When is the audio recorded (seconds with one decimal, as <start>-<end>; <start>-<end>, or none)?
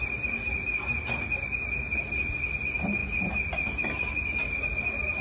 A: 0.0-5.2